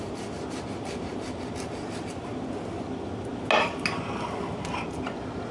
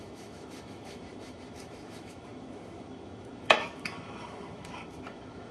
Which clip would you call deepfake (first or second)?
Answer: second